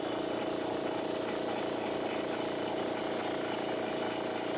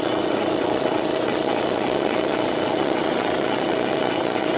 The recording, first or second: first